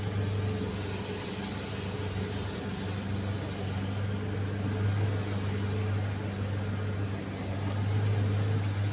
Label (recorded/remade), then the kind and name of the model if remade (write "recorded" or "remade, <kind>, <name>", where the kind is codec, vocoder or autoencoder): recorded